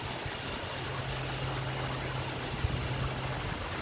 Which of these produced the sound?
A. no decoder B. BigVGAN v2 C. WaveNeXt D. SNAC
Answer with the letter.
A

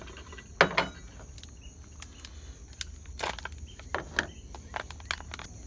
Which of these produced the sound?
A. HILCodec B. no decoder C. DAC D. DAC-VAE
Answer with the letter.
B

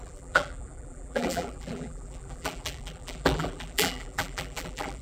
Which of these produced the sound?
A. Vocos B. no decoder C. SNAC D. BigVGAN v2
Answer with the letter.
D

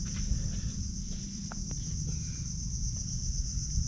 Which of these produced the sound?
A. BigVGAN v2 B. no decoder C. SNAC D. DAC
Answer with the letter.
B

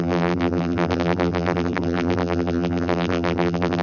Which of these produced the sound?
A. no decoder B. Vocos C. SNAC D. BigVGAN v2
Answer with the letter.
D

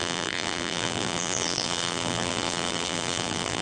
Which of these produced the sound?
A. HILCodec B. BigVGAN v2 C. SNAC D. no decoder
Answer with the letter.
B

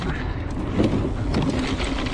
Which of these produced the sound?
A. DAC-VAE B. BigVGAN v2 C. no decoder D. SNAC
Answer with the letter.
C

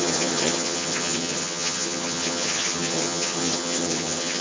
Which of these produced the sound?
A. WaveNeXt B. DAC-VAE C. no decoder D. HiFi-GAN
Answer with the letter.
D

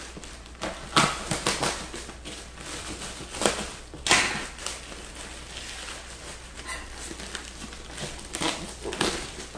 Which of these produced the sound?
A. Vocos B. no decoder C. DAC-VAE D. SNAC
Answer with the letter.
B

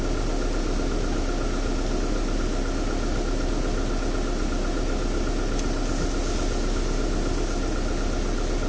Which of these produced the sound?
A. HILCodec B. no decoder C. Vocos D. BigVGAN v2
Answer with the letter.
B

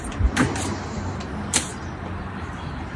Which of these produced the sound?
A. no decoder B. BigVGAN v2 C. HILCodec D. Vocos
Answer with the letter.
B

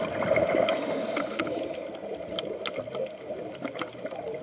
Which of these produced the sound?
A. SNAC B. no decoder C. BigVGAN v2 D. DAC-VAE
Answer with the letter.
B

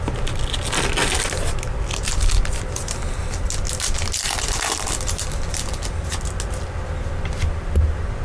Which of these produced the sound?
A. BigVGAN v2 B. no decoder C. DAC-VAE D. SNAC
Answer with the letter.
B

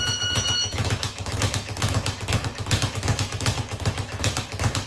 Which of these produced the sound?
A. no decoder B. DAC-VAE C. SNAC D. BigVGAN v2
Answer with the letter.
B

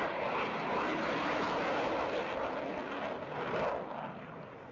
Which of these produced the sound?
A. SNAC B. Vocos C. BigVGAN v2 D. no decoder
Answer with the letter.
D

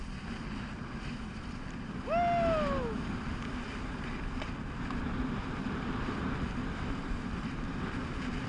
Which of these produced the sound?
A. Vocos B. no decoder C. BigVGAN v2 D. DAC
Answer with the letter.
B